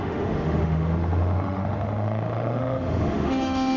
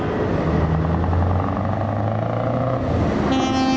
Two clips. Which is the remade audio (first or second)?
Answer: first